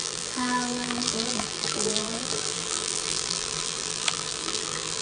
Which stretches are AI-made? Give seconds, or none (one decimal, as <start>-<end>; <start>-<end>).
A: 0.0-5.0